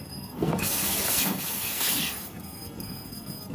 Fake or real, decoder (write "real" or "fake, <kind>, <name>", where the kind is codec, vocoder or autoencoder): fake, codec, SNAC